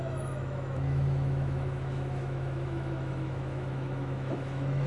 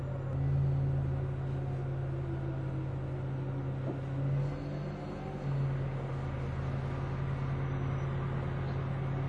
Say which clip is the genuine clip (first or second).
second